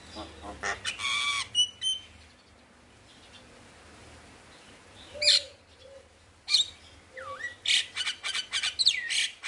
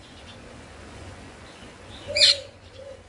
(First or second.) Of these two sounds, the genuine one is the first